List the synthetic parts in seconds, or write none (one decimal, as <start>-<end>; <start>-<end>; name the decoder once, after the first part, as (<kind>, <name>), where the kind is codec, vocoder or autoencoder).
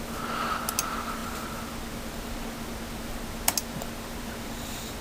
none